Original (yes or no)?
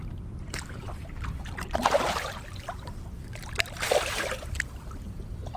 no